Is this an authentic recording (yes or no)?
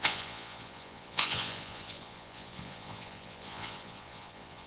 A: no